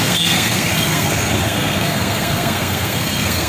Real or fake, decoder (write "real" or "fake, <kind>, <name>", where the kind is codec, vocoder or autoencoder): fake, codec, SNAC